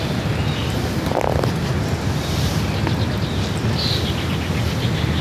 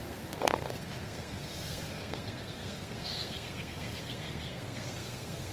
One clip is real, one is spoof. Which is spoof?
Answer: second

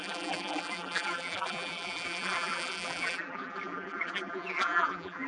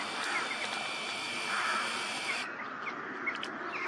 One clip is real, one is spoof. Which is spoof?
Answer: first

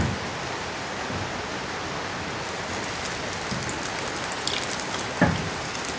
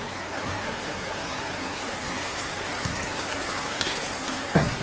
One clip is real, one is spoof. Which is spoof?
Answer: second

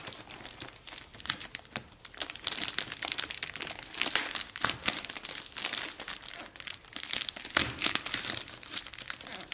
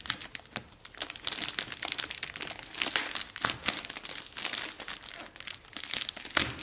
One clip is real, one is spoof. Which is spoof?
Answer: first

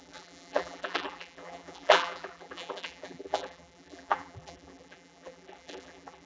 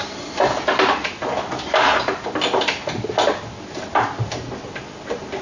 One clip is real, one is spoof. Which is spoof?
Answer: first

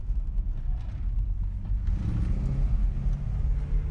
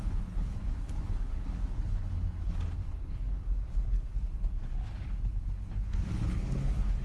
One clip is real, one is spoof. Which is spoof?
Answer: second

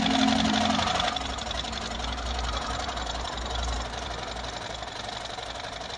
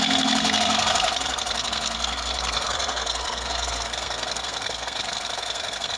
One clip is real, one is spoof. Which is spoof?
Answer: second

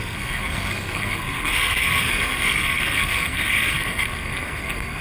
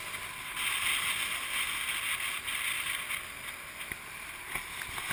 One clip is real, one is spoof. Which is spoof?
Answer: first